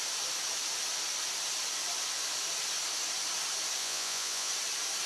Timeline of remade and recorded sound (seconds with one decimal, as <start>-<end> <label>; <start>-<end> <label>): 0.0-3.8 recorded; 3.8-4.5 remade; 4.5-5.1 recorded